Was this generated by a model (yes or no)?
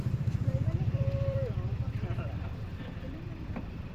yes